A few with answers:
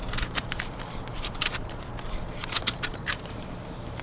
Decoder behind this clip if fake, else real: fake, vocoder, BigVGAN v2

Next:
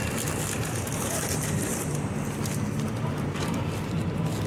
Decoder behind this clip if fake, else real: real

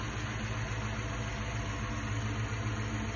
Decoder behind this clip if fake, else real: real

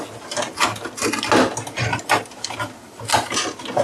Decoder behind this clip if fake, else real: real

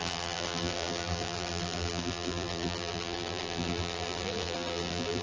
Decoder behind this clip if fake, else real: fake, vocoder, BigVGAN v2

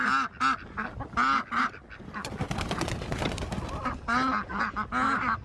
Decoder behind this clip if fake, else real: real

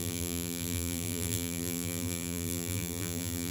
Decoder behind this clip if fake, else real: fake, vocoder, BigVGAN v2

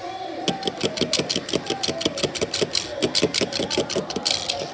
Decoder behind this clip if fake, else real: real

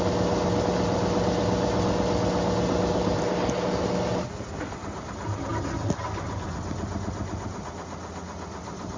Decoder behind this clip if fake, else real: real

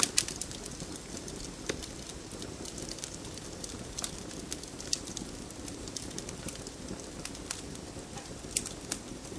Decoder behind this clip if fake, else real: real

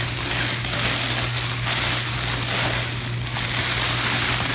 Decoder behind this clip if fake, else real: real